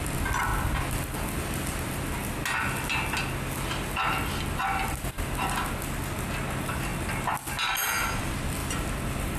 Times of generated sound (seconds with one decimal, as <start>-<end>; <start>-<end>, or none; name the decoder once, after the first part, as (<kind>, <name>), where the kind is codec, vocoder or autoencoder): none